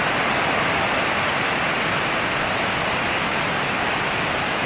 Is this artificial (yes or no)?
no